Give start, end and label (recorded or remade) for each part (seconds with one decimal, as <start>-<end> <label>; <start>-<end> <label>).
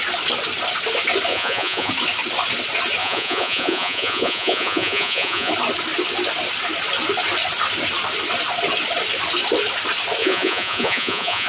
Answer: 0.0-1.3 recorded; 1.3-1.9 remade; 1.9-3.0 recorded; 3.0-5.5 remade; 5.5-10.2 recorded; 10.2-11.5 remade